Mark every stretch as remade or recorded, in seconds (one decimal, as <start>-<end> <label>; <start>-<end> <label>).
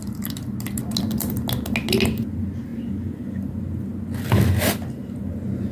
0.0-5.7 recorded